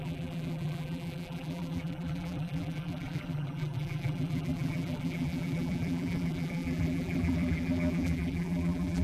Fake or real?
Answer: fake